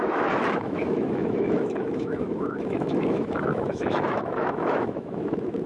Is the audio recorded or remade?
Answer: remade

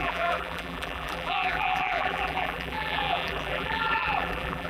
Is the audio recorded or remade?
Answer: remade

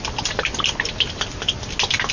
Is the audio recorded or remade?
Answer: recorded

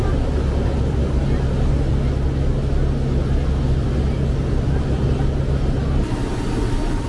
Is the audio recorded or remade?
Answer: recorded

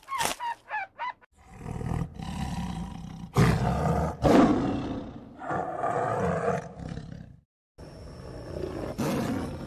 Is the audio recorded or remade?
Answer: recorded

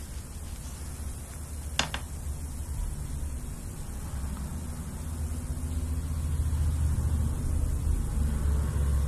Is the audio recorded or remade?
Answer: recorded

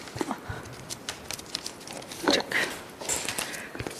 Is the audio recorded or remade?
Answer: recorded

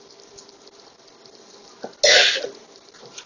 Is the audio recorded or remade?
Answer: recorded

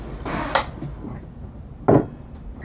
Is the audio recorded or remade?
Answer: recorded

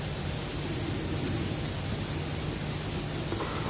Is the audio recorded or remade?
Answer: recorded